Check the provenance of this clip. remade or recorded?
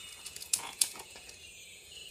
remade